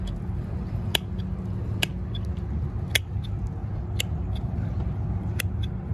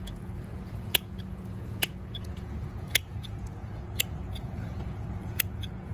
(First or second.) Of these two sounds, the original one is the first